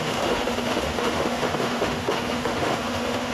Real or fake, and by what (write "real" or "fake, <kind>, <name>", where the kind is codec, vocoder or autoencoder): fake, autoencoder, DAC-VAE